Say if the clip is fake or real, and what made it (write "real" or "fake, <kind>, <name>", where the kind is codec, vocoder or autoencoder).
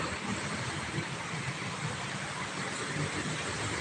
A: real